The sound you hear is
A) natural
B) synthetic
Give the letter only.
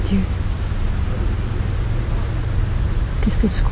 A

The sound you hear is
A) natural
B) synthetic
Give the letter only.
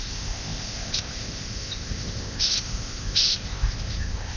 B